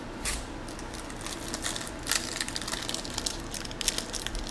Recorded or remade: recorded